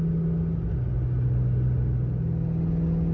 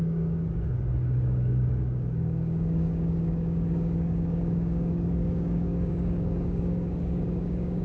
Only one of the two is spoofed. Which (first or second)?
second